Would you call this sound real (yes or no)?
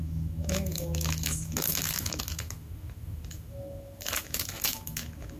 no